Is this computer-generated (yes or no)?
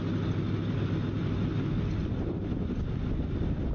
no